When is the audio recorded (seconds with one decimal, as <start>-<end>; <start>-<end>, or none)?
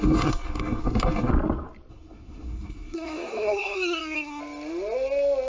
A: 1.3-1.9; 4.4-5.5